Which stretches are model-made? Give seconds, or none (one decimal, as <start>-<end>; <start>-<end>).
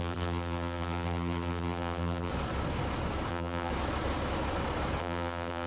0.0-2.3; 3.3-3.7; 5.0-5.7